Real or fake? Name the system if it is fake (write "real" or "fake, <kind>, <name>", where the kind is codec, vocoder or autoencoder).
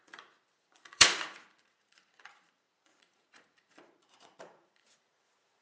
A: fake, vocoder, Vocos